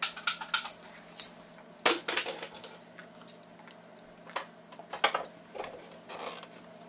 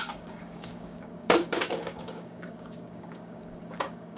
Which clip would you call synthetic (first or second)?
second